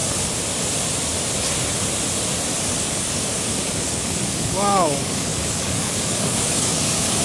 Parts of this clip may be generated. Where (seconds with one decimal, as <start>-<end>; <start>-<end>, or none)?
2.8-7.2